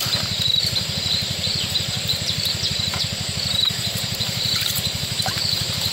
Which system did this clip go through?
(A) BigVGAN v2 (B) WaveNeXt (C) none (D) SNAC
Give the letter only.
A